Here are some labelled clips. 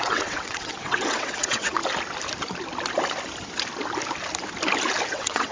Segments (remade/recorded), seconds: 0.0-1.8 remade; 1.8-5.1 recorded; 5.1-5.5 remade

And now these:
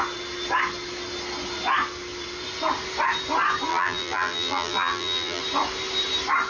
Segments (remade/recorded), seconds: 0.0-3.7 recorded; 3.7-5.4 remade; 5.4-6.5 recorded

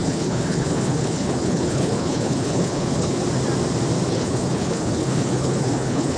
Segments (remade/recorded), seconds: 0.0-3.2 remade; 3.2-4.1 recorded; 4.1-6.2 remade

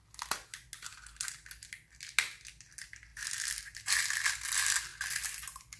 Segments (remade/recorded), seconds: 0.0-5.8 recorded